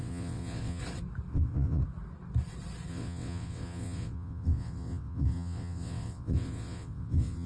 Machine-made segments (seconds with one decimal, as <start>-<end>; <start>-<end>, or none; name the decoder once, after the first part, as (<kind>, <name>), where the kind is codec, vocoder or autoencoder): 0.0-0.8 (vocoder, WaveNeXt); 1.3-1.8; 2.9-7.5